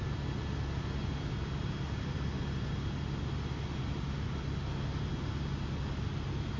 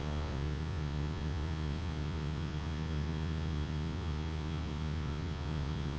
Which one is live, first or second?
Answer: first